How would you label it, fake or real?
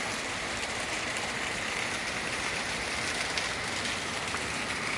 fake